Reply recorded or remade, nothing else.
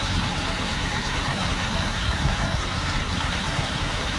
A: remade